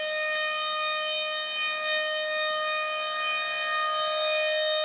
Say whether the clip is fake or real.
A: real